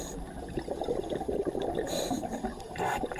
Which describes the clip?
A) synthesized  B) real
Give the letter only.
B